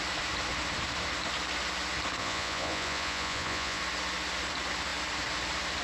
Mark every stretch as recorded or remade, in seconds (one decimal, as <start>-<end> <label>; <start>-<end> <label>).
0.0-2.2 recorded; 2.2-3.8 remade; 3.8-5.8 recorded